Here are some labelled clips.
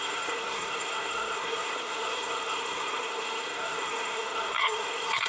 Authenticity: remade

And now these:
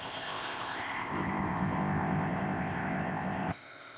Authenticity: remade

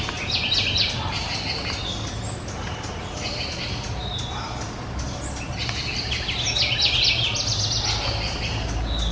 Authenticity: recorded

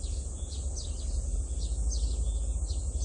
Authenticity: recorded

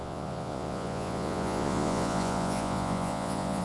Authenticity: remade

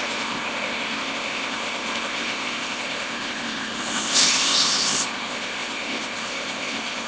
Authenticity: remade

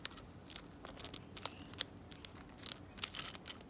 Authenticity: recorded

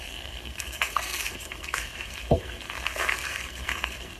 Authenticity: remade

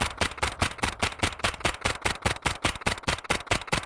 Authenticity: recorded